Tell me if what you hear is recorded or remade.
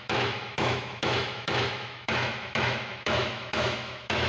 remade